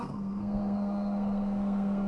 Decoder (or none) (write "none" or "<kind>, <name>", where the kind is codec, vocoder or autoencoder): codec, SNAC